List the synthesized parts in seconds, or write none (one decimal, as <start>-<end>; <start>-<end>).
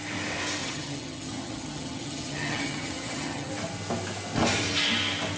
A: 0.6-3.5